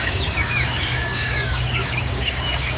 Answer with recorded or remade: remade